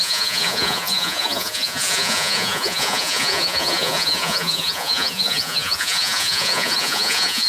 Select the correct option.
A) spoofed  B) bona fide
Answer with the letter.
A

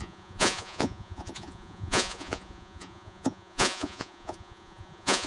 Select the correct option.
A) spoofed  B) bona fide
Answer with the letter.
A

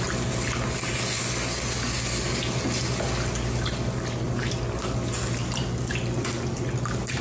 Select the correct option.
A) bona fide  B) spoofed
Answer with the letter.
A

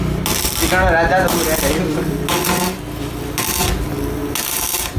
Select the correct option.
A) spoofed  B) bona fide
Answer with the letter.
B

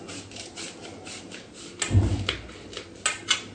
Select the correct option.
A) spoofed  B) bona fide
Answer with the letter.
B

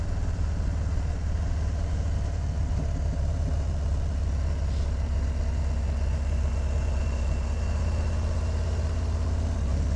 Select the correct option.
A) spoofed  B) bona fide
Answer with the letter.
B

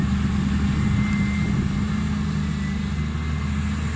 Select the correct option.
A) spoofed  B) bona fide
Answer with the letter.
B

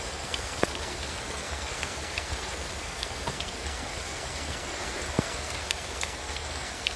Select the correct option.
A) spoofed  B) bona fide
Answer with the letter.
A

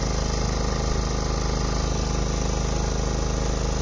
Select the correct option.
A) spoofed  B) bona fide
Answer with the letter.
B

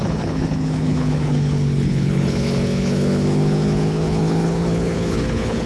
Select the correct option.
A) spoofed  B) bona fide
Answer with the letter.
A